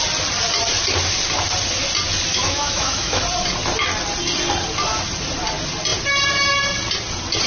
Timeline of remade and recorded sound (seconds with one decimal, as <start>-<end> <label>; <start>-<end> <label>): 0.0-2.3 recorded; 2.3-3.2 remade; 3.2-7.5 recorded